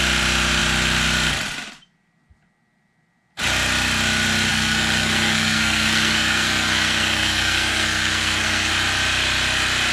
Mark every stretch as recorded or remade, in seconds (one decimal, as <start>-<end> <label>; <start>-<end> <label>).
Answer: 0.0-4.5 recorded; 4.5-8.7 remade; 8.7-9.9 recorded